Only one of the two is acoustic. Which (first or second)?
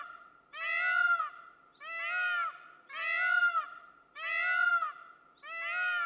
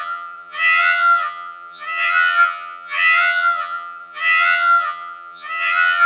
first